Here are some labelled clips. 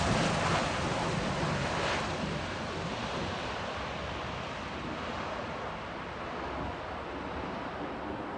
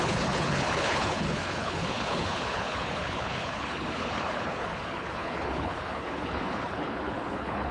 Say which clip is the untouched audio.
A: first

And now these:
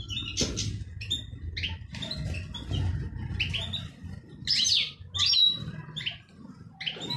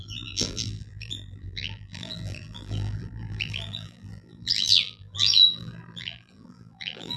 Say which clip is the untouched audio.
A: first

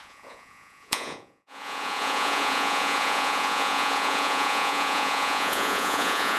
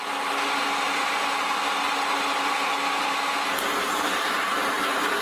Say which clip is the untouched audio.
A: second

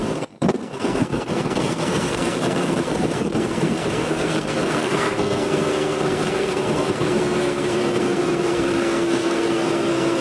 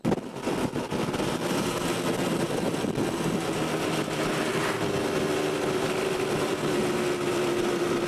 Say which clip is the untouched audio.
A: second